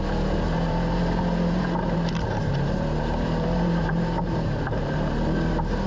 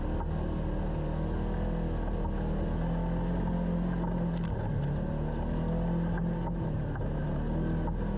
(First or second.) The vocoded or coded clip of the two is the first